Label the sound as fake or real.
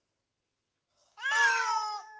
fake